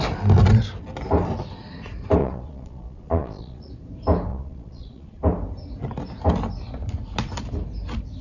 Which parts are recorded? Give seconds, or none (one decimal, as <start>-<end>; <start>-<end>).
0.0-2.2; 3.7-4.3; 5.2-8.2